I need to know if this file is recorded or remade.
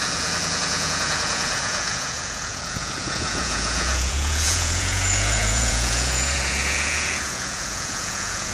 remade